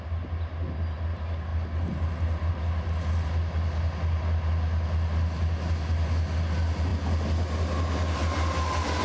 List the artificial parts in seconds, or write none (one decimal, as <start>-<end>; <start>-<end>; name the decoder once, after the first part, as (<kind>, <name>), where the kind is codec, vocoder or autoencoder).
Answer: none